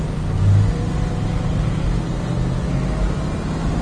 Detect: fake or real real